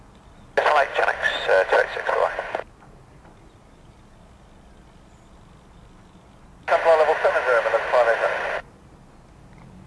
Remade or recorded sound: recorded